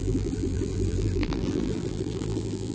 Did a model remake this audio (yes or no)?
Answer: yes